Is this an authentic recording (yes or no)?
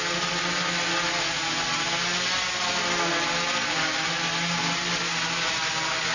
yes